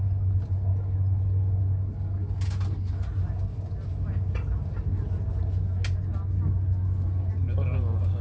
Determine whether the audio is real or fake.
real